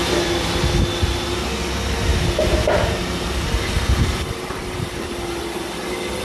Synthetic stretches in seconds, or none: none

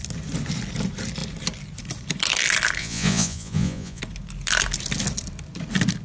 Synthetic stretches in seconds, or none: 2.8-4.0 (vocoder, Vocos)

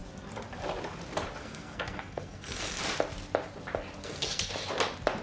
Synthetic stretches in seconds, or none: 1.4-2.8 (codec, SNAC); 4.0-4.5

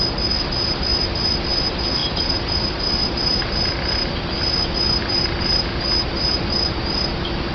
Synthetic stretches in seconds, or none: none

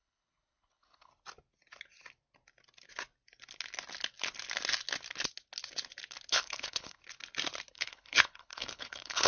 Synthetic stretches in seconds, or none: 0.0-1.1 (codec, HILCodec); 6.3-7.0; 7.7-9.3

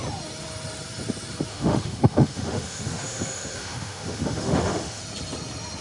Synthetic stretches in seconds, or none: 1.5-5.0 (autoencoder, DAC-VAE)

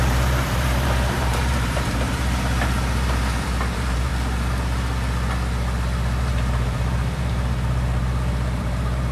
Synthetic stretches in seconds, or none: 0.0-4.1 (vocoder, BigVGAN v2); 6.2-9.1